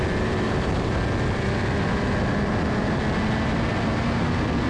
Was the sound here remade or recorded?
recorded